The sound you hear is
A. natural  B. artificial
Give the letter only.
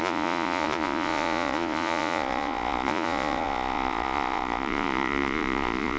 B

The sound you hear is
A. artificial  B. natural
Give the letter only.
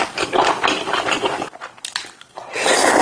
B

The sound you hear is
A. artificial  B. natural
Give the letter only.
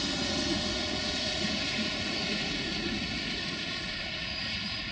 A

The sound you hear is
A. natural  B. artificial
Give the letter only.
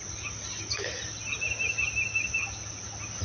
A